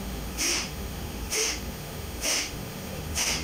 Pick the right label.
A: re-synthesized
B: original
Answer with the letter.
A